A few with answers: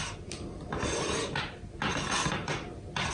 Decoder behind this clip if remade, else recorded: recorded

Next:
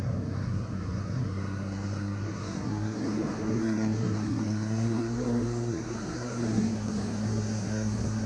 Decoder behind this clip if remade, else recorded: remade, codec, SNAC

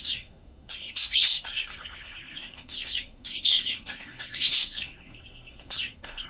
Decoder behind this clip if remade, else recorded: remade, codec, SNAC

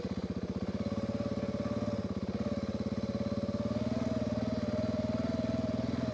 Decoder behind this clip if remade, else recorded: recorded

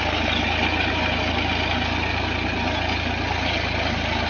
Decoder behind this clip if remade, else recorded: recorded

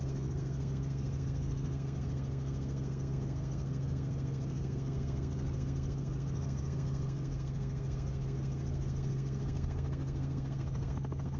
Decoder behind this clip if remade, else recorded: remade, codec, SNAC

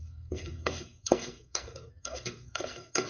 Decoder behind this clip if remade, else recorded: remade, codec, SNAC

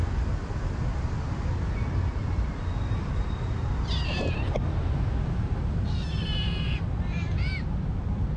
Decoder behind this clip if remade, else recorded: recorded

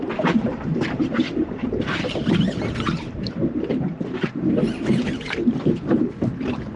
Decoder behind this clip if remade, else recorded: recorded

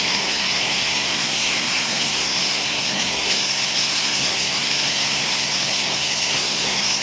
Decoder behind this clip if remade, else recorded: remade, codec, SNAC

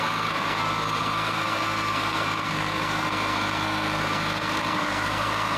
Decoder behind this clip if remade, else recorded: remade, codec, SNAC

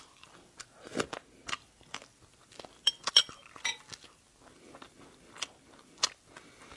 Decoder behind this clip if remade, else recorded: recorded